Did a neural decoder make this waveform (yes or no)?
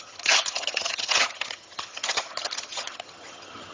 yes